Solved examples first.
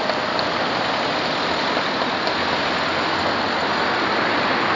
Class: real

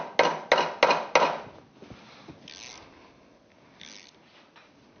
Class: real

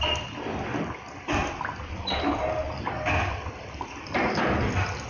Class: real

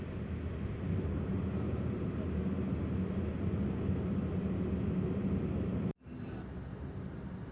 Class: real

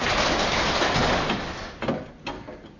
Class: real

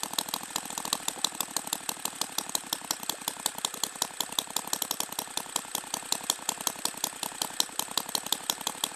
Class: real